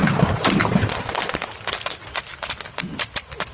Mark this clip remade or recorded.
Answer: recorded